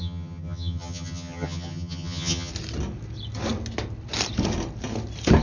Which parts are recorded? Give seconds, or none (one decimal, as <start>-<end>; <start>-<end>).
2.5-5.4